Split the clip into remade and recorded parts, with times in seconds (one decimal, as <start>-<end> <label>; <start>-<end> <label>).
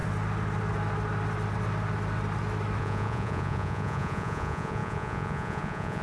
0.0-2.8 recorded; 2.8-6.0 remade